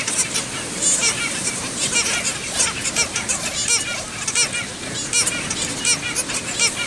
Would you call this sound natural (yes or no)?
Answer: yes